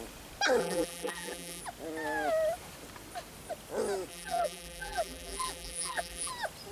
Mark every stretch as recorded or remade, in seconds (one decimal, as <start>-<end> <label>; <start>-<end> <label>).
0.0-0.6 recorded; 0.6-1.6 remade; 1.6-4.1 recorded; 4.1-6.3 remade; 6.3-6.7 recorded